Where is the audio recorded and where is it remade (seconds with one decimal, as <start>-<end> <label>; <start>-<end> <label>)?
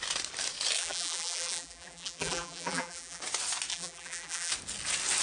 0.0-0.8 recorded; 0.8-3.2 remade; 3.2-3.7 recorded; 3.7-4.5 remade; 4.5-5.2 recorded